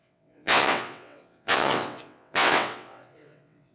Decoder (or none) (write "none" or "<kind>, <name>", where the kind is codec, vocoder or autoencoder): vocoder, WaveNeXt